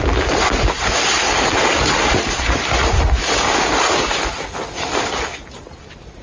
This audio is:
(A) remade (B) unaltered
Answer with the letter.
B